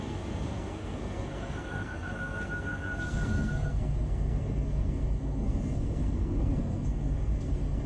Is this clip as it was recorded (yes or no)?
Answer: no